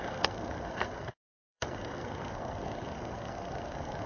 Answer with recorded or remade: remade